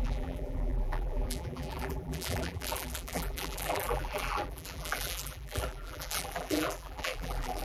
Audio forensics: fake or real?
fake